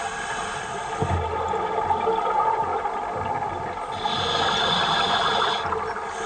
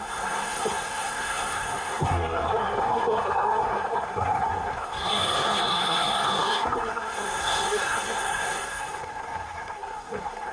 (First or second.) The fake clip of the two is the second